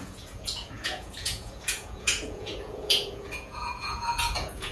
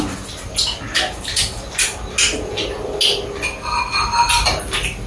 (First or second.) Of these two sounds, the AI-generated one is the first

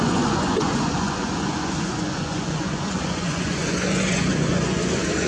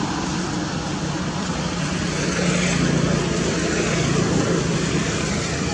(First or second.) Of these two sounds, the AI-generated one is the first